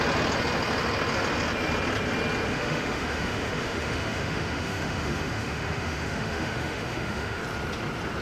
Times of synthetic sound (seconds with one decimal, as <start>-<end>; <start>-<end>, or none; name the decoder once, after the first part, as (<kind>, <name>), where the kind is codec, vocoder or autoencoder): 2.5-7.4 (autoencoder, DAC-VAE)